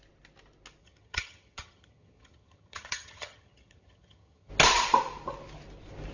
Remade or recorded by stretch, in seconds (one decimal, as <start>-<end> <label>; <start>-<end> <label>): 0.0-0.8 recorded; 0.8-4.5 remade; 4.5-6.1 recorded

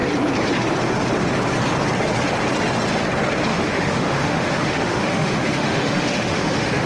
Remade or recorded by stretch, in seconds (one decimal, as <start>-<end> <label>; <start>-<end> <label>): 0.0-3.5 recorded; 3.5-6.9 remade

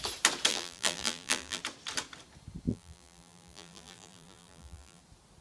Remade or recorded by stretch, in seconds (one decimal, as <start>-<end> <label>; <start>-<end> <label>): 0.0-0.5 recorded; 0.5-1.6 remade; 1.6-2.7 recorded; 2.7-5.0 remade; 5.0-5.4 recorded

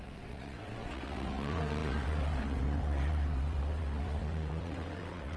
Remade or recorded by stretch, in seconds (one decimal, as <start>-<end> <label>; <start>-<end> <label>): 0.0-5.4 remade